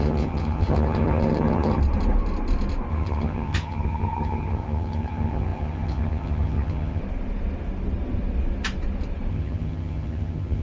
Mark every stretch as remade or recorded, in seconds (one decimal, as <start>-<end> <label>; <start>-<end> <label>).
0.0-1.8 remade; 1.8-2.9 recorded; 2.9-7.0 remade; 7.0-9.3 recorded; 9.3-10.6 remade